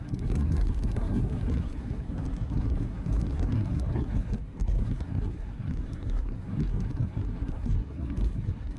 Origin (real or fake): fake